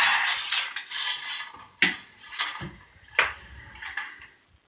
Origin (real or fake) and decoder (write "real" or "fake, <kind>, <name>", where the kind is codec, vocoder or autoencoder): real